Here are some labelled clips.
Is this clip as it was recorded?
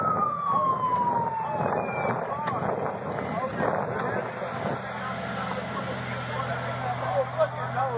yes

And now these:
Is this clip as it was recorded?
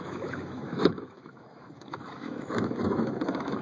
no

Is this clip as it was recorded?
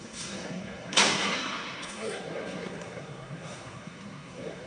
no